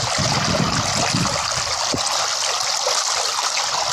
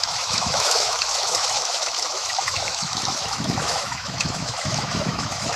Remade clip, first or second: second